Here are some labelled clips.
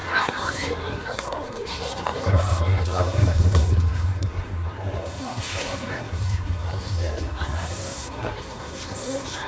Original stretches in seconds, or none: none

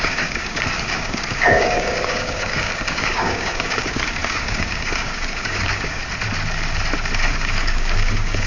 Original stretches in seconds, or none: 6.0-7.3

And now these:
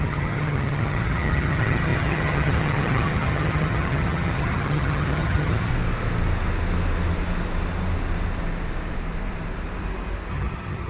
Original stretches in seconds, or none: 5.7-10.3

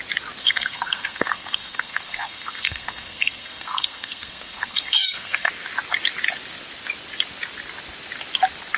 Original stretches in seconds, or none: 0.0-0.4; 5.5-8.8

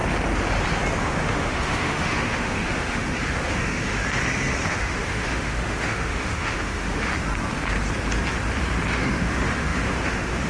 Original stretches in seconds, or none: 0.0-1.0; 4.0-4.7; 7.1-8.9

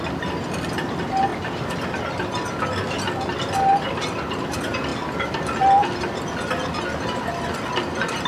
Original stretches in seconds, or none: 0.0-8.3

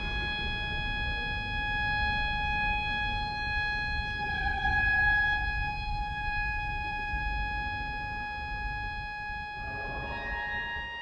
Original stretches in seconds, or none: 0.0-5.9; 7.2-11.0

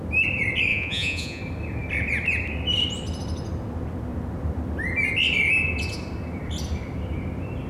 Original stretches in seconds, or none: 0.0-0.7; 1.4-7.7